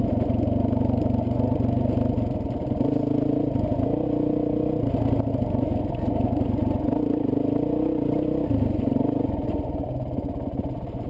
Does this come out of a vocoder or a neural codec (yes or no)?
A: no